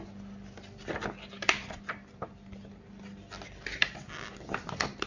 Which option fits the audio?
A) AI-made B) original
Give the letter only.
B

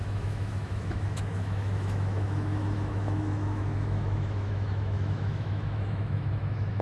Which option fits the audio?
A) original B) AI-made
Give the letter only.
B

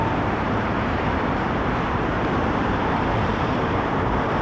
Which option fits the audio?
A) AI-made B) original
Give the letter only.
A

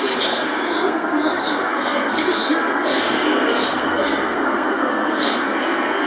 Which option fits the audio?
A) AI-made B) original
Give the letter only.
A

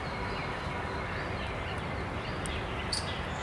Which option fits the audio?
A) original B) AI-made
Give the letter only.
A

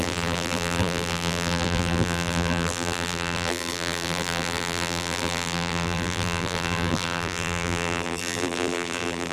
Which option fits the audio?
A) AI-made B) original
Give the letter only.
A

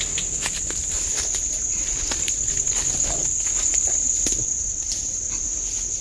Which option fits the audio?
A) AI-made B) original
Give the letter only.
B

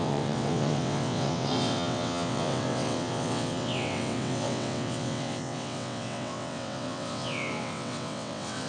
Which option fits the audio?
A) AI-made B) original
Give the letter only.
A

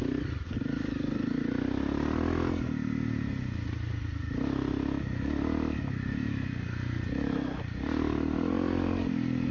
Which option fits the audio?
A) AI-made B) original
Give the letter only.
B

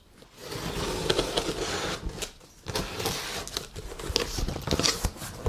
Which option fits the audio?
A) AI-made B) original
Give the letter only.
B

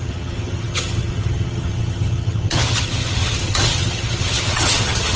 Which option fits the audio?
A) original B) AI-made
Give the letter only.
B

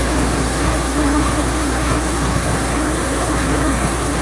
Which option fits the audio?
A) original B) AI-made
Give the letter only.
B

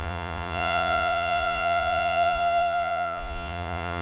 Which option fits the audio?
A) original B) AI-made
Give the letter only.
B